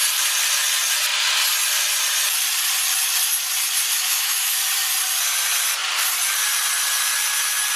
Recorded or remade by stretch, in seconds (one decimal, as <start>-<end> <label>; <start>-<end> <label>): 0.0-3.9 recorded; 3.9-4.6 remade; 4.6-7.8 recorded

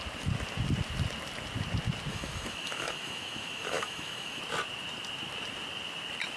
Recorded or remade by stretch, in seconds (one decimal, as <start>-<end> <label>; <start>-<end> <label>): 0.0-2.1 recorded; 2.1-4.4 remade; 4.4-6.4 recorded

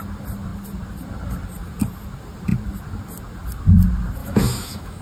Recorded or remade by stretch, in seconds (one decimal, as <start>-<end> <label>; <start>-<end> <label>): 0.0-4.2 recorded; 4.2-5.0 remade

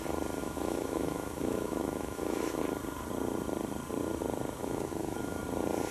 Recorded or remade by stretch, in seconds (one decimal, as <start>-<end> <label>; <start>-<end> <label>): 0.0-0.4 recorded; 0.4-2.6 remade; 2.6-4.6 recorded; 4.6-5.4 remade; 5.4-5.9 recorded

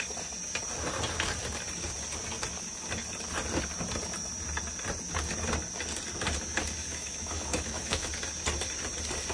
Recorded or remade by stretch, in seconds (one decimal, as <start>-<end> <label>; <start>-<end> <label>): 0.0-6.9 recorded; 6.9-8.1 remade; 8.1-9.3 recorded

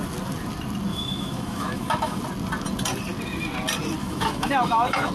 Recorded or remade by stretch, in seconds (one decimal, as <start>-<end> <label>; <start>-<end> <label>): 0.0-0.9 recorded; 0.9-2.2 remade; 2.2-4.0 recorded; 4.0-5.1 remade